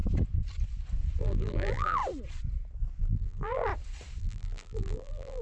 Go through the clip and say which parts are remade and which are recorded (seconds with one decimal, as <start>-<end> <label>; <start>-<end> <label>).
0.0-1.2 recorded; 1.2-2.0 remade; 2.0-3.0 recorded; 3.0-3.7 remade; 3.7-4.2 recorded; 4.2-5.4 remade